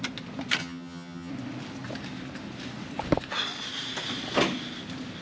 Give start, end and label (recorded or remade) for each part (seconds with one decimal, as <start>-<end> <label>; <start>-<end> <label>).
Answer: 0.0-0.6 recorded; 0.6-1.3 remade; 1.3-5.2 recorded